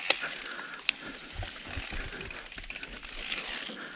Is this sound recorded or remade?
recorded